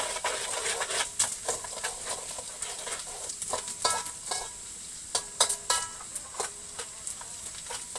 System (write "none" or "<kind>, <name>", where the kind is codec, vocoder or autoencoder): none